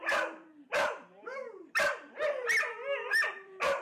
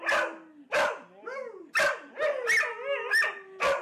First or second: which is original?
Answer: second